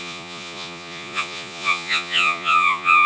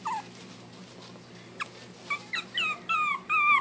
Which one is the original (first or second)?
second